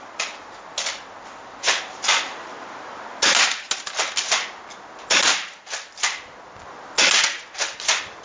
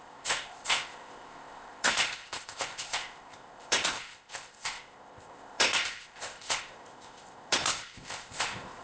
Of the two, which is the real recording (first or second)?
first